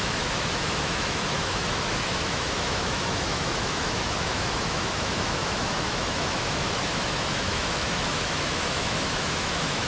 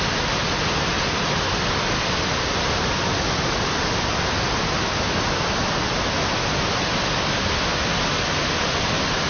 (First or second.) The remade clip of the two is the first